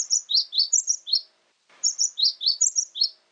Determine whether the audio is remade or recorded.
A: recorded